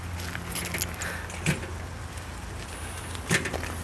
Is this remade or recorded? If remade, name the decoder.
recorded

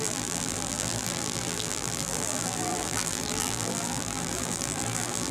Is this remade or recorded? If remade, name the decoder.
remade, vocoder, BigVGAN v2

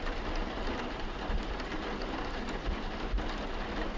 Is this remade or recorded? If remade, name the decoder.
remade, vocoder, BigVGAN v2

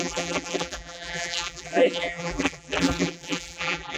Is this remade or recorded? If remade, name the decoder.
remade, vocoder, BigVGAN v2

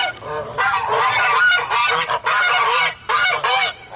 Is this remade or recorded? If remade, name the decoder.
remade, vocoder, BigVGAN v2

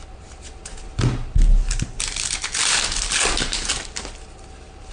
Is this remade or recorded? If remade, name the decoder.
recorded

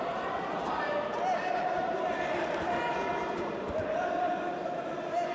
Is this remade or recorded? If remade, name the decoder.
remade, vocoder, BigVGAN v2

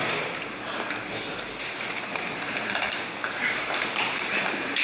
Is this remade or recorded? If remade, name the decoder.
remade, vocoder, BigVGAN v2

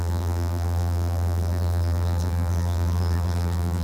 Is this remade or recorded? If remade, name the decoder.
remade, vocoder, BigVGAN v2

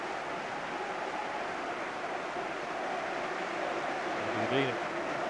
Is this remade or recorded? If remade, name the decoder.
recorded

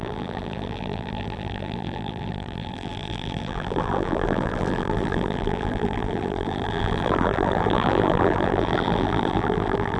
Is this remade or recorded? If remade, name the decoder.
remade, vocoder, BigVGAN v2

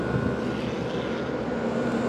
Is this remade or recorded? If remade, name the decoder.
recorded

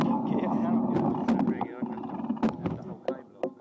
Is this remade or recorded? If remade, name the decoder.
recorded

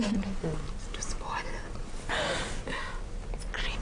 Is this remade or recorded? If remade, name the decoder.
recorded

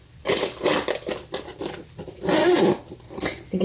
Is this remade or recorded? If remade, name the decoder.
remade, vocoder, BigVGAN v2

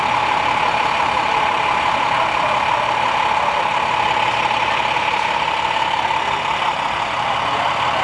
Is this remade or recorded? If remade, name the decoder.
recorded